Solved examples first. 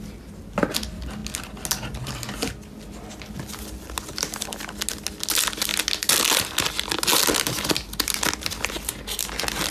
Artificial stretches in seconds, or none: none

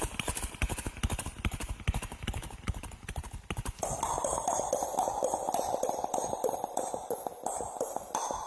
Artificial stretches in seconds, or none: none

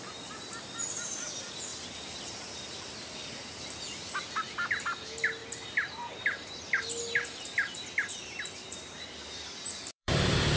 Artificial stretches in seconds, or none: 1.7-4.1 (vocoder, BigVGAN v2); 5.4-10.1

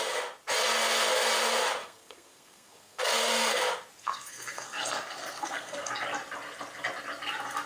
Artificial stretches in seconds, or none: 1.8-3.6 (codec, SNAC); 4.0-5.9